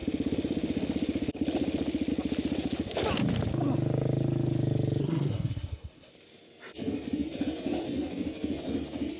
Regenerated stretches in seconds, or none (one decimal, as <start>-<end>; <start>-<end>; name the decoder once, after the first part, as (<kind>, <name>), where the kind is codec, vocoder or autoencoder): 5.0-6.1 (codec, SNAC)